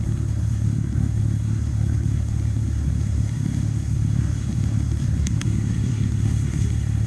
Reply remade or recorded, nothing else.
remade